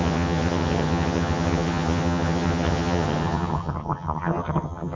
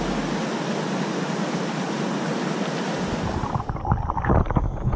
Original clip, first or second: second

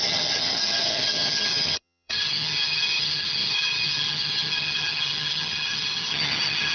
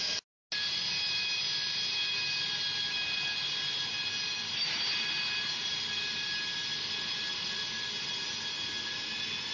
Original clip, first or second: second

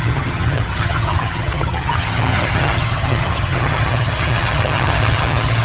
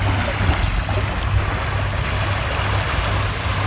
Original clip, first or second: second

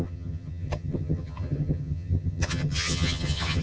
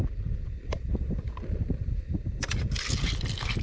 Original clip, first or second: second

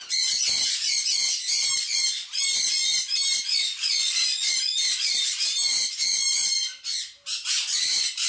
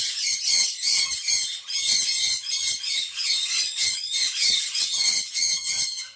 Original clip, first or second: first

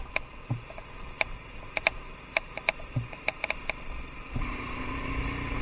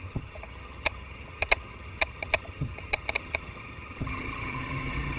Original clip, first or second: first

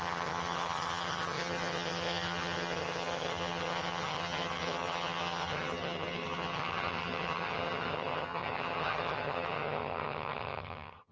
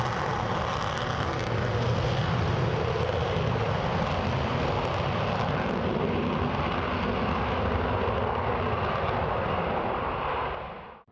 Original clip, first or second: second